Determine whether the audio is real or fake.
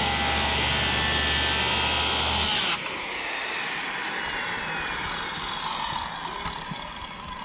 real